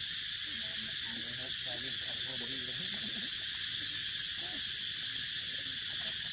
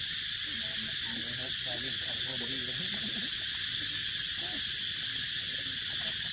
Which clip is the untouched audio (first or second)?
first